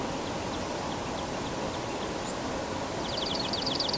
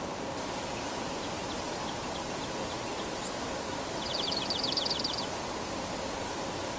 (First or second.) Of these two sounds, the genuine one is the first